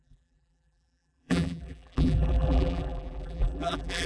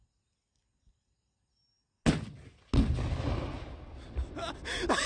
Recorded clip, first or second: second